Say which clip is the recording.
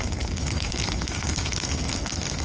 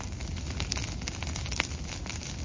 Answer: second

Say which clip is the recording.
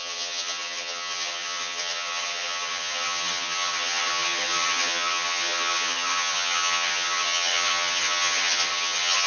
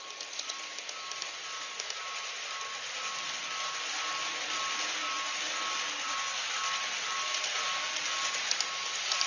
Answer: second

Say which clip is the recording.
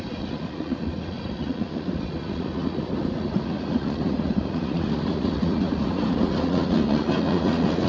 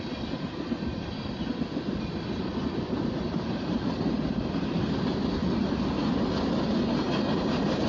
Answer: second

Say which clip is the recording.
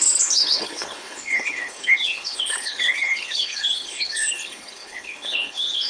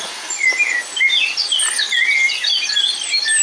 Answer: second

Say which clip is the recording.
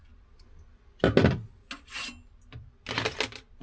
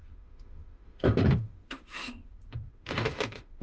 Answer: first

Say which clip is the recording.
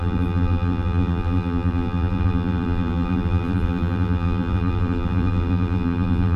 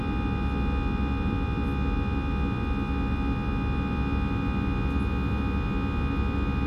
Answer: second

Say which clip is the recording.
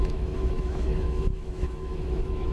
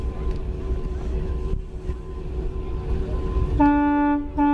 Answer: second